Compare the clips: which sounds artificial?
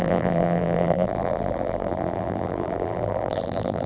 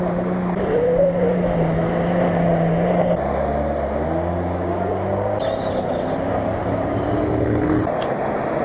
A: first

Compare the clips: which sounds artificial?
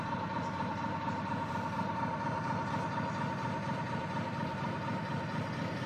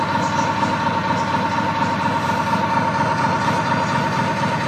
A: first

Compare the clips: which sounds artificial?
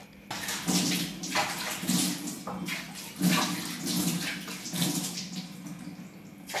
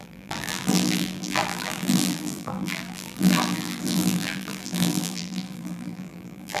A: second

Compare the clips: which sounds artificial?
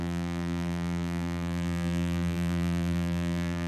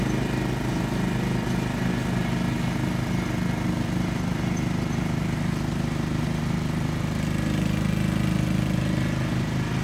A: first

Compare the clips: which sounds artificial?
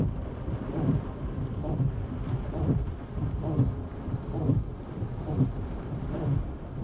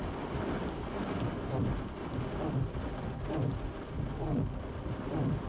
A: first